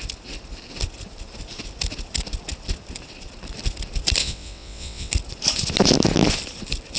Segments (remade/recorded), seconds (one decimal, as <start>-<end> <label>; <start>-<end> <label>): 0.0-4.2 recorded; 4.2-5.1 remade; 5.1-7.0 recorded